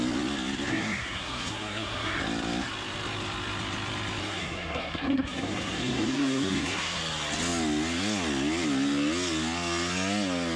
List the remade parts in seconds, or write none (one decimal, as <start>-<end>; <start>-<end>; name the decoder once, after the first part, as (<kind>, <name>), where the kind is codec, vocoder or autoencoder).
0.7-2.2 (codec, SNAC); 4.2-7.0